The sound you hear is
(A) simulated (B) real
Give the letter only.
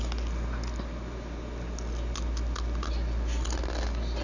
B